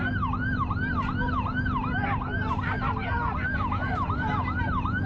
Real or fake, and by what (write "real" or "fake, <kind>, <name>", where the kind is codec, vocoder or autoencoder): real